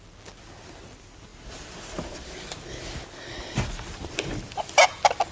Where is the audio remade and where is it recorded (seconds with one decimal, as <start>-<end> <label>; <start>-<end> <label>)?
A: 0.0-5.3 recorded